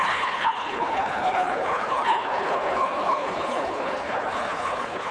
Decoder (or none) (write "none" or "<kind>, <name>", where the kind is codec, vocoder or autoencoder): codec, HILCodec